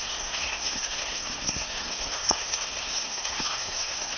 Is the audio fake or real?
fake